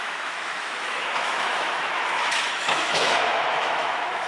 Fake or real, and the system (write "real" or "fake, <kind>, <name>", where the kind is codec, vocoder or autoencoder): fake, autoencoder, DAC-VAE